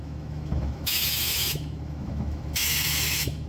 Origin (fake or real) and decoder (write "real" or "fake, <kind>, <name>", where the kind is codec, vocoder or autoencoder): fake, autoencoder, DAC-VAE